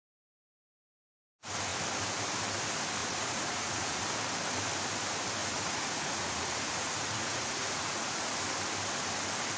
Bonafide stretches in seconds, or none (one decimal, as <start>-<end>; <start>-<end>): 0.0-3.0; 4.0-5.4; 8.3-9.6